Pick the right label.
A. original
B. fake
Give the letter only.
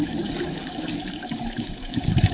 B